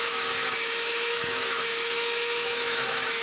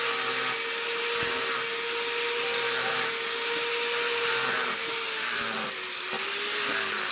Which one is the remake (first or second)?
first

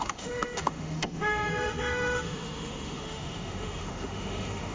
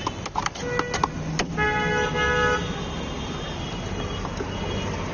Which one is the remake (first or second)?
first